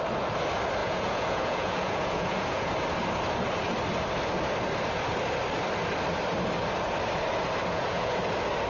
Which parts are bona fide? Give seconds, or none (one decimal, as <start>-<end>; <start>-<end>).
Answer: 0.0-0.8; 2.7-7.6; 8.2-8.7